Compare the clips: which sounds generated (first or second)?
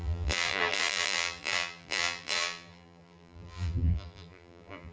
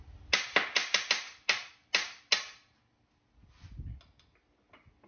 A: first